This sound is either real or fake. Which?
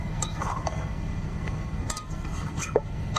fake